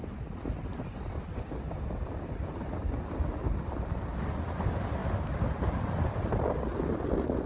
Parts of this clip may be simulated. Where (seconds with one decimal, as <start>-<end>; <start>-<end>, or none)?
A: none